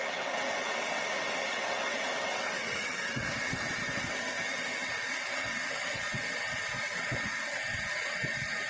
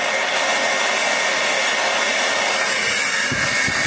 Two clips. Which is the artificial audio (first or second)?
first